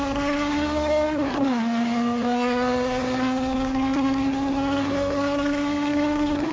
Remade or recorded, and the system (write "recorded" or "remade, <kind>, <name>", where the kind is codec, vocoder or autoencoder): remade, codec, SNAC